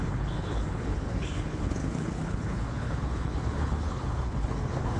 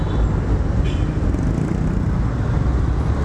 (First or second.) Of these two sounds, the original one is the second